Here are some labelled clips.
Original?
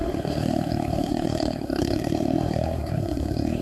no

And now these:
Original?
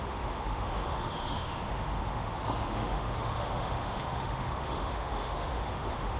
no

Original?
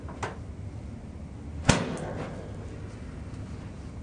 yes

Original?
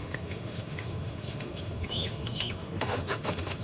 no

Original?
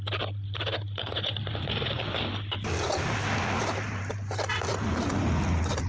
yes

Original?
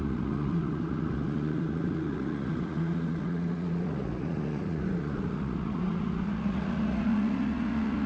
no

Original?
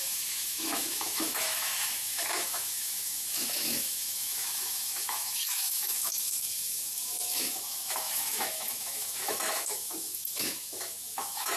no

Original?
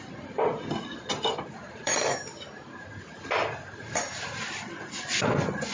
no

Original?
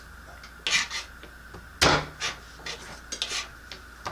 yes